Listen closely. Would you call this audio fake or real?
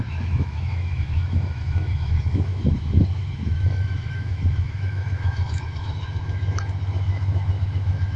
fake